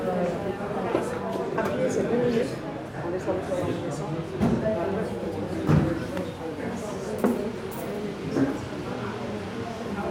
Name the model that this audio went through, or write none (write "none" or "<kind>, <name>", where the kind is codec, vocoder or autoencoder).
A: none